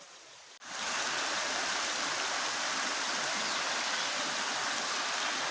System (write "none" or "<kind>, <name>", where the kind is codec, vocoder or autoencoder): none